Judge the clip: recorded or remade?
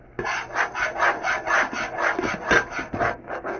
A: recorded